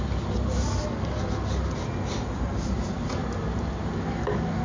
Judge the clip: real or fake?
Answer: real